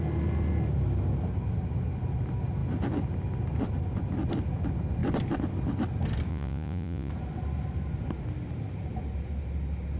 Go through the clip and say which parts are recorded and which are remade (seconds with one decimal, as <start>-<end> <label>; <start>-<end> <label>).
0.0-6.3 recorded; 6.3-7.1 remade; 7.1-10.0 recorded